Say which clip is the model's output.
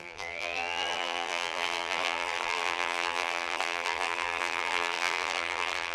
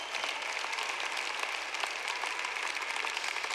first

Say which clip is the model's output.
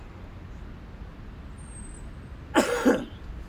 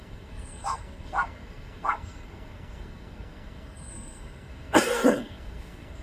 second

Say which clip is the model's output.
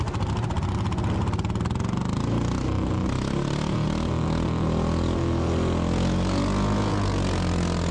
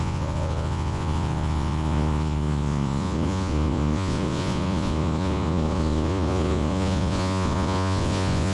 second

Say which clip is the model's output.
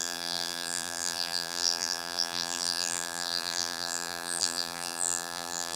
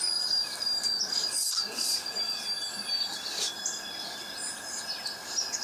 first